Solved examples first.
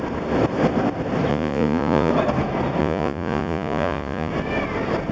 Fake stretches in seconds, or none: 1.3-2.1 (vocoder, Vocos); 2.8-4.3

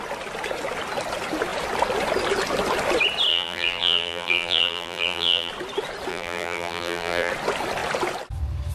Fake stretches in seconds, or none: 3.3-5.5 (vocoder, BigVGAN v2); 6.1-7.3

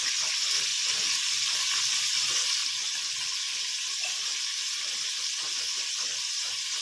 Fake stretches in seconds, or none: none

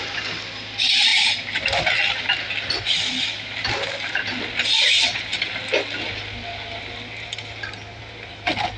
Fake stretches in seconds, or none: none

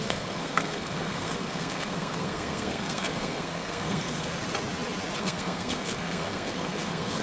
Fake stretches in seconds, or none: 0.0-4.3 (codec, SNAC); 5.2-7.2

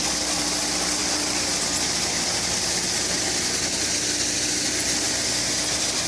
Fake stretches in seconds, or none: none